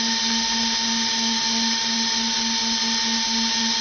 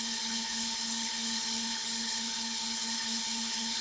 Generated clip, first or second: second